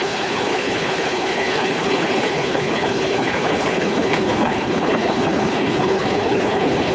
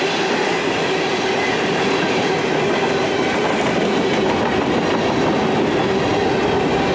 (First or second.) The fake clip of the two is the first